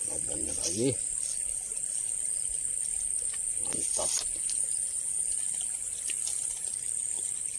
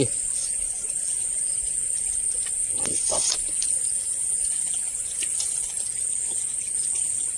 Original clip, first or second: first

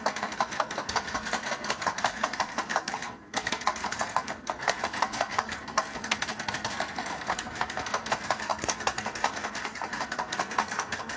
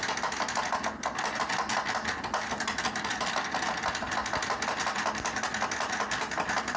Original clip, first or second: second